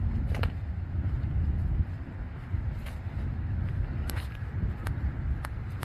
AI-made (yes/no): no